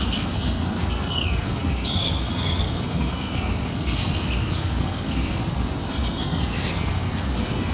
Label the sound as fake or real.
fake